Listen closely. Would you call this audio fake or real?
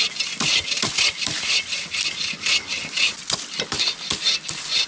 real